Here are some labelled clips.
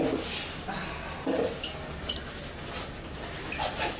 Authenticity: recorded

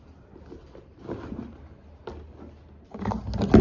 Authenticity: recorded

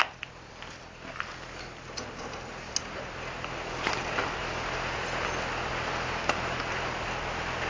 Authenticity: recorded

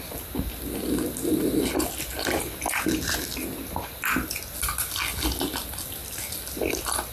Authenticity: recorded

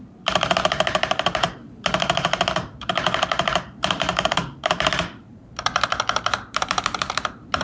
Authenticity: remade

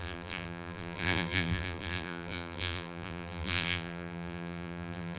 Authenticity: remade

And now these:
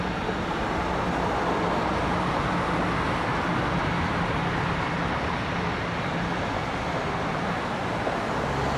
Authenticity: recorded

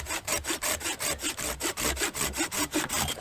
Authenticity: remade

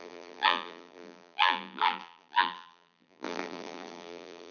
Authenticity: remade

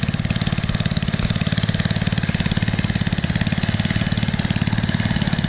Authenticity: recorded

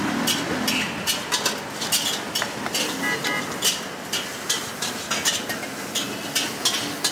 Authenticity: recorded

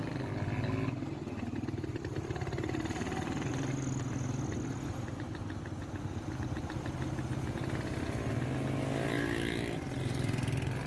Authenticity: recorded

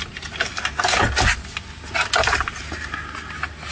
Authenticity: recorded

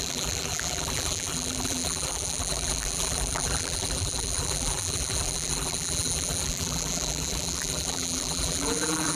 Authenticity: remade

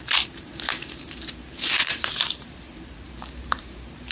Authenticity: remade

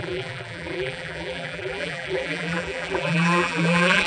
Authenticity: remade